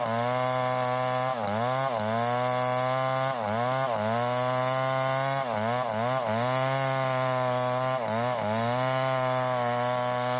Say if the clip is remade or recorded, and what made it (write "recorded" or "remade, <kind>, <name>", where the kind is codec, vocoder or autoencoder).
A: recorded